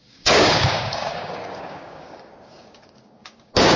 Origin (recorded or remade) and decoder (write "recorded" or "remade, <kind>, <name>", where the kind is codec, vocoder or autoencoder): remade, codec, DAC